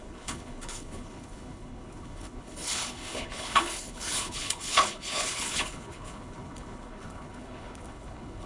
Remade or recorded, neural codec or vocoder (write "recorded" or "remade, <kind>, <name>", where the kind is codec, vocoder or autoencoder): remade, codec, HILCodec